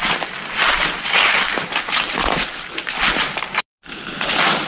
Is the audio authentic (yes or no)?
yes